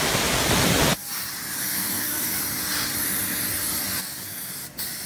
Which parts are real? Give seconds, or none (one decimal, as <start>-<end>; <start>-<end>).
0.0-1.6; 2.4-4.0; 4.5-5.1